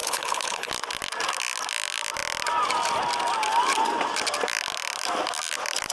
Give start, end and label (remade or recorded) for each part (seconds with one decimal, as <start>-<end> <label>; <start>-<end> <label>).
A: 0.0-0.7 remade; 0.7-5.9 recorded